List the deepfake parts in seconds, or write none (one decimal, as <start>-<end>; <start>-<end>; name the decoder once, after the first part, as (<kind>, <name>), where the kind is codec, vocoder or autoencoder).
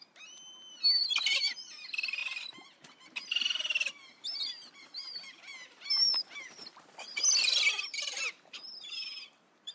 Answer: 1.0-9.7 (vocoder, BigVGAN v2)